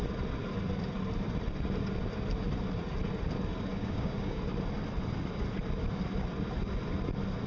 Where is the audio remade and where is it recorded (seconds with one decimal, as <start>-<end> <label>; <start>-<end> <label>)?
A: 0.0-3.7 recorded; 3.7-4.4 remade; 4.4-7.5 recorded